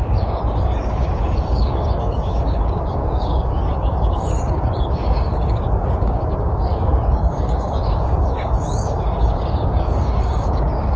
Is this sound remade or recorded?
remade